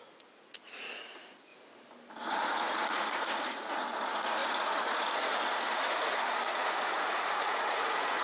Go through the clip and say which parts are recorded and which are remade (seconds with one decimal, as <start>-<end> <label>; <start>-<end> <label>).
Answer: 0.0-1.5 remade; 1.5-2.3 recorded; 2.3-8.2 remade